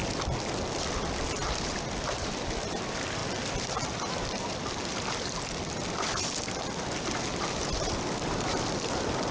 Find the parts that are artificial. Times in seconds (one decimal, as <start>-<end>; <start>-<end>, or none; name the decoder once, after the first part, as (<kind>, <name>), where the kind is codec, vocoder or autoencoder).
0.0-3.2 (vocoder, BigVGAN v2); 8.2-9.3

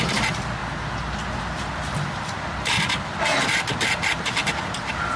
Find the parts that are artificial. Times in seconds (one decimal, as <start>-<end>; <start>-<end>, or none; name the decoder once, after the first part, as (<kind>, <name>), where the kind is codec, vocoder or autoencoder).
0.0-0.6 (vocoder, BigVGAN v2); 1.4-2.9; 4.0-4.4

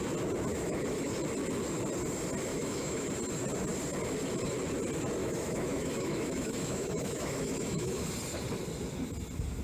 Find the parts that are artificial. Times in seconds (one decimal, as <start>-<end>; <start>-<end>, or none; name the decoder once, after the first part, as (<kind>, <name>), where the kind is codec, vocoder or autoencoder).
0.5-1.1 (autoencoder, DAC-VAE); 2.5-3.1; 5.2-8.0